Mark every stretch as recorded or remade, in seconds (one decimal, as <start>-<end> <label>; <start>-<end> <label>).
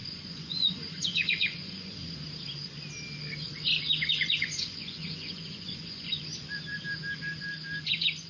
0.0-2.0 remade; 2.0-4.1 recorded; 4.1-6.3 remade; 6.3-7.8 recorded; 7.8-8.3 remade